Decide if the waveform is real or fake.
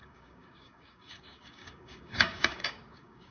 fake